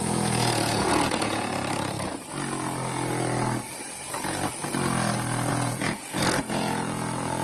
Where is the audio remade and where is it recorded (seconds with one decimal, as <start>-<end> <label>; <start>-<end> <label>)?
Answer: 0.0-2.1 remade; 2.1-5.5 recorded; 5.5-7.4 remade